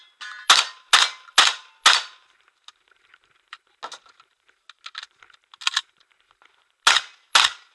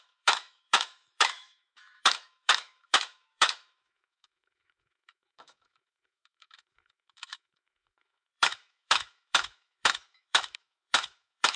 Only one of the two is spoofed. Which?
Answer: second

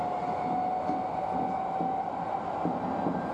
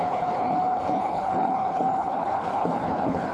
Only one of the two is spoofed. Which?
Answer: second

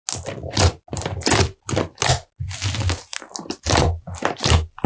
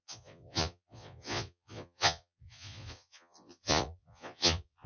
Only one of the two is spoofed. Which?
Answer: second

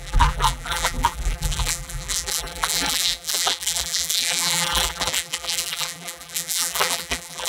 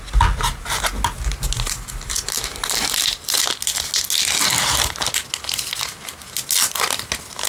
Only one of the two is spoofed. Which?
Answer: first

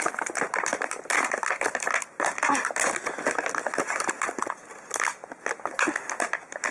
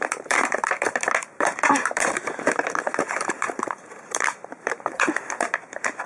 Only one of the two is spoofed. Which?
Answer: second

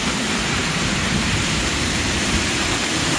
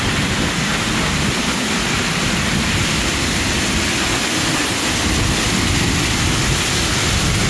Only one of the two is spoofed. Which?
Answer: first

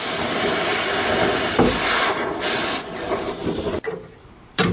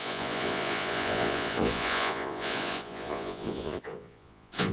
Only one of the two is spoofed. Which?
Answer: second